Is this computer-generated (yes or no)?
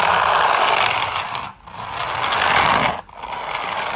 no